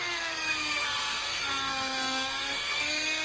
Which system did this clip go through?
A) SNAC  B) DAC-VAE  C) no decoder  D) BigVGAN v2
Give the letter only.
A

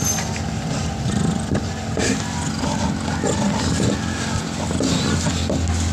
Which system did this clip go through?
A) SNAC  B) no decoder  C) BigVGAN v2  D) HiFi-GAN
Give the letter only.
B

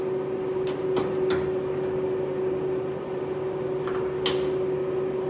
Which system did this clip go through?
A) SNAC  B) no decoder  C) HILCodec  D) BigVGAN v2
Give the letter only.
B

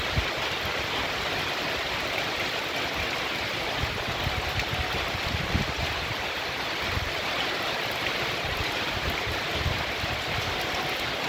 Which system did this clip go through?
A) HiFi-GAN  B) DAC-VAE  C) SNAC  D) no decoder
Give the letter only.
D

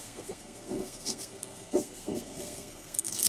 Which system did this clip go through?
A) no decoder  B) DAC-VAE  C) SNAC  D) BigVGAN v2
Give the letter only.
C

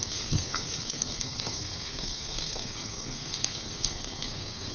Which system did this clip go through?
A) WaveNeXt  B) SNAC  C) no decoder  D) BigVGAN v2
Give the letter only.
B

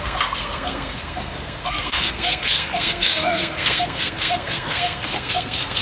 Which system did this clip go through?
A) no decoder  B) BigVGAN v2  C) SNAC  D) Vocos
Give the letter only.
C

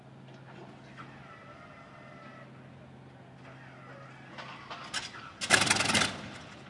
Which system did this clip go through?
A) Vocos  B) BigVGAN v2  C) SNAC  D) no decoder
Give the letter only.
D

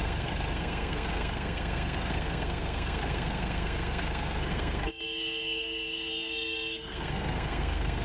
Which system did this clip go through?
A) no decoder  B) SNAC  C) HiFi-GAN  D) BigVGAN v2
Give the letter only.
B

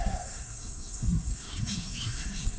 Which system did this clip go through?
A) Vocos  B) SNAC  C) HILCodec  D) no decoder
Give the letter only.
B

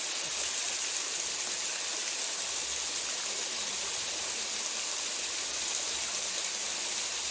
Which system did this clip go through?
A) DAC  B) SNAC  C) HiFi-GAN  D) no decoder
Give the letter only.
D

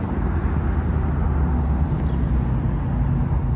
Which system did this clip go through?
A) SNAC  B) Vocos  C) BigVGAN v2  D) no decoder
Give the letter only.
D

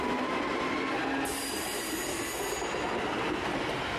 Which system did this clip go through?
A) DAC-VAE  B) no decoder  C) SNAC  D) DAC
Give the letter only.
B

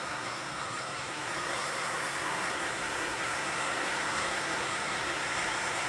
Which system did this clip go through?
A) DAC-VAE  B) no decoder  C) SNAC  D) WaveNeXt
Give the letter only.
C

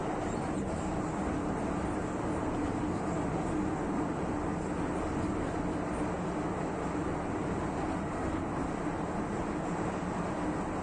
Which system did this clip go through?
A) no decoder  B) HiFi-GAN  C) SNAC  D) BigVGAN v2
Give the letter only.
A